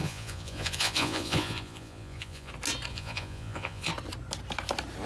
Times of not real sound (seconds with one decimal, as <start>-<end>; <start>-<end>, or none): 0.0-2.5; 2.9-3.9